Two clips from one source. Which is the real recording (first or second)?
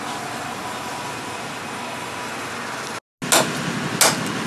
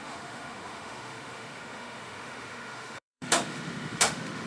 first